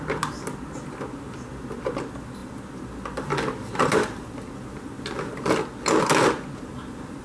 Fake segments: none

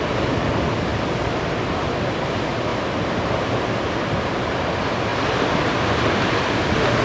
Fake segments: 0.9-2.1 (vocoder, BigVGAN v2)

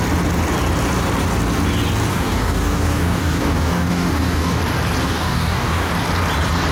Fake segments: 2.1-4.6 (codec, DAC); 5.0-5.9